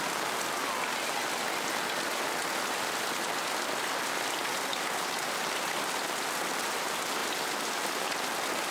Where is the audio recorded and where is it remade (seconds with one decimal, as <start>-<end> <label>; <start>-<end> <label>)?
0.0-8.7 recorded

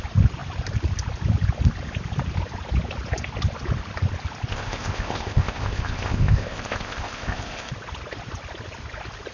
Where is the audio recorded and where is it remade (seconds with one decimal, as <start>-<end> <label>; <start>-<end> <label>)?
0.0-4.5 recorded; 4.5-7.7 remade; 7.7-9.3 recorded

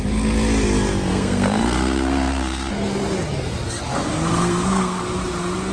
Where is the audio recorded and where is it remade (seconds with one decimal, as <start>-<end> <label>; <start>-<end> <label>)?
0.0-1.1 recorded; 1.1-2.7 remade; 2.7-4.3 recorded; 4.3-5.0 remade; 5.0-5.7 recorded

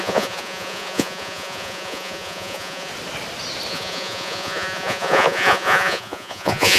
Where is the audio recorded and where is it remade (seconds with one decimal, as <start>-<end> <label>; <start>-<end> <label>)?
0.0-2.9 remade; 2.9-3.7 recorded; 3.7-6.8 remade